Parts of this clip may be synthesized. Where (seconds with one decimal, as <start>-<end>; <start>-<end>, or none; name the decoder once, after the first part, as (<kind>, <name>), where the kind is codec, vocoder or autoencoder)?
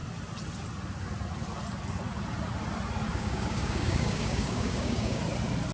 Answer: 3.1-5.2 (codec, DAC)